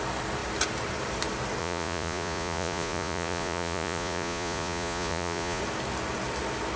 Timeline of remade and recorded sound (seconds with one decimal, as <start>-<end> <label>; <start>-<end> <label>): 0.0-1.6 recorded; 1.6-5.6 remade; 5.6-6.8 recorded